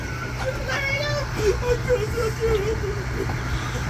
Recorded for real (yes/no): yes